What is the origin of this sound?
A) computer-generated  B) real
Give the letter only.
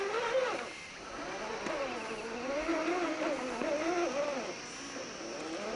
B